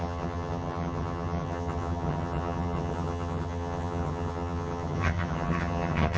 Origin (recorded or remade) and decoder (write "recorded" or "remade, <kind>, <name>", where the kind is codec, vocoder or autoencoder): remade, vocoder, HiFi-GAN